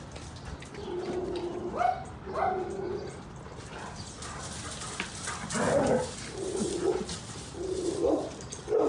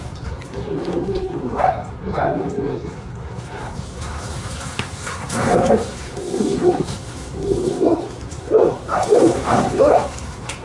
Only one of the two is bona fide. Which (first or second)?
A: first